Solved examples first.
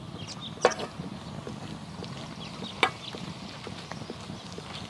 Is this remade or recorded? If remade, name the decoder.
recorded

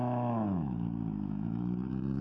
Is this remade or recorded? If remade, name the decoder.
remade, autoencoder, DAC-VAE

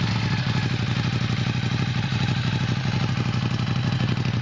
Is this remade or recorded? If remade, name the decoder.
recorded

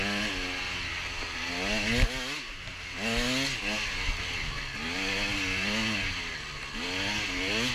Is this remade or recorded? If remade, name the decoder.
recorded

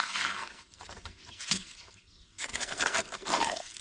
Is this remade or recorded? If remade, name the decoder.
remade, codec, SNAC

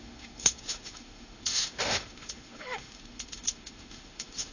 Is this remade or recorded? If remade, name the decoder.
remade, autoencoder, DAC-VAE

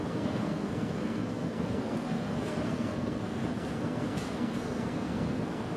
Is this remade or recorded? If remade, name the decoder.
remade, codec, SNAC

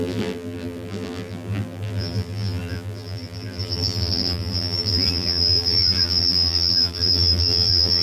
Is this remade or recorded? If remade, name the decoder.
remade, vocoder, BigVGAN v2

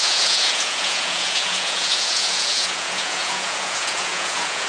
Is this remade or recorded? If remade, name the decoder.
remade, vocoder, Vocos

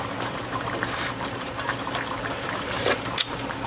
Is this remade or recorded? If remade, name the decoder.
remade, vocoder, BigVGAN v2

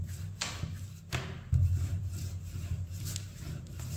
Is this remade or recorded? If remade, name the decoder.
recorded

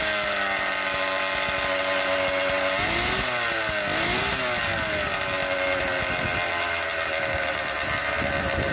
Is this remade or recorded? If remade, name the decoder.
recorded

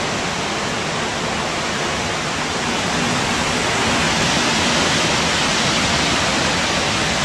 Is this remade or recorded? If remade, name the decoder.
recorded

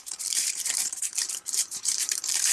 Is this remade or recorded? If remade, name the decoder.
remade, vocoder, BigVGAN v2